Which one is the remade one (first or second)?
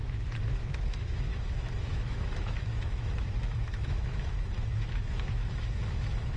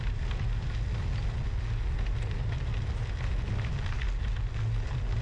first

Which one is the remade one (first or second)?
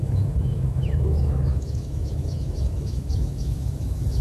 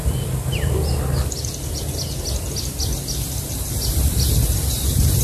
first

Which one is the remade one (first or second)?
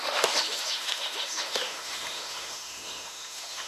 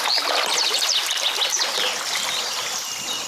first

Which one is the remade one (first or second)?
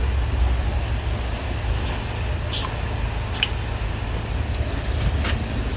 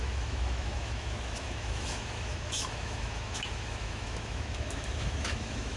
second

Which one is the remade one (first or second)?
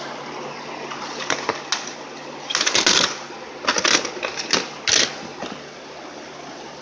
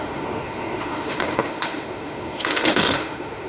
second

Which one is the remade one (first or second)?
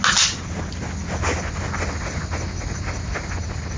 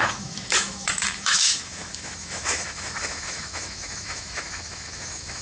second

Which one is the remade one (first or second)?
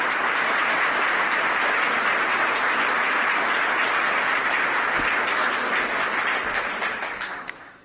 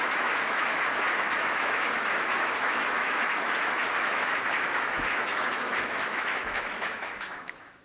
second